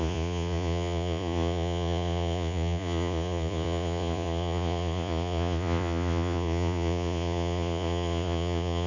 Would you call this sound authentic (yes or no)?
no